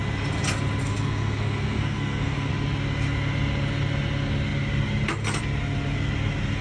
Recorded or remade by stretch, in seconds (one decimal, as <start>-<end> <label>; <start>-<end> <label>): 0.0-0.8 recorded; 0.8-2.5 remade; 2.5-6.6 recorded